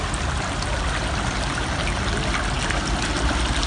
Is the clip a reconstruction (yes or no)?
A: no